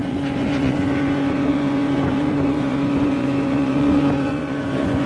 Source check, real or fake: fake